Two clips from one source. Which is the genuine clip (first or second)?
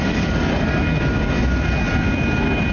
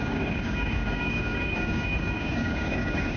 first